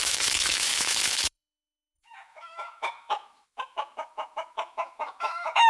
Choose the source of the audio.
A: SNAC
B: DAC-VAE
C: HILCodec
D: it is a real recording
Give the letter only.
B